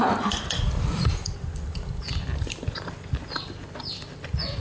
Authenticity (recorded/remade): remade